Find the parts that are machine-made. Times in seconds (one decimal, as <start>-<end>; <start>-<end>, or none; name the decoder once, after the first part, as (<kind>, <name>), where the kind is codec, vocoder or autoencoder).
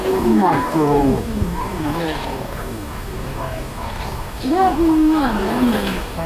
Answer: 0.0-6.3 (codec, DAC)